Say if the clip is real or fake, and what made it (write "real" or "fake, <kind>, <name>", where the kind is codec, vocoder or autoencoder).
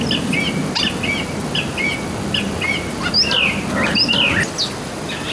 real